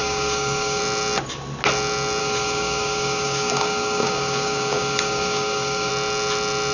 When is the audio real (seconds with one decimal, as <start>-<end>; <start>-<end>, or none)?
0.8-2.2; 5.9-6.7